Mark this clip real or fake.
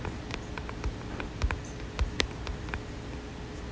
real